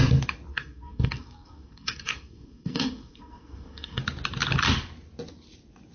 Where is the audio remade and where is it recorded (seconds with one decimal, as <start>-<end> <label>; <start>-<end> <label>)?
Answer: 0.0-0.5 recorded; 0.5-4.0 remade; 4.0-5.9 recorded